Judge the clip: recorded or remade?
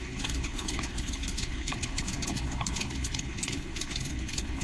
remade